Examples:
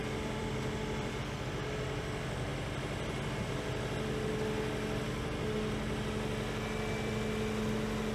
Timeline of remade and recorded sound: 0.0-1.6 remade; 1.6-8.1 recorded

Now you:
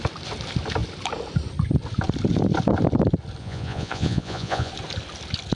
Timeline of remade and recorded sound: 0.0-3.4 recorded; 3.4-4.7 remade; 4.7-5.5 recorded